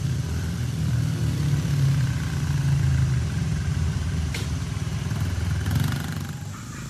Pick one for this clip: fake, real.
fake